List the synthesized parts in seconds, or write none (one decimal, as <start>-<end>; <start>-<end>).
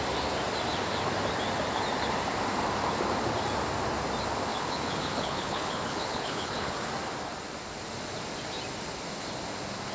4.5-6.9